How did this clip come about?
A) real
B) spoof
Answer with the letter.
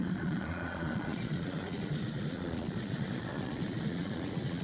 B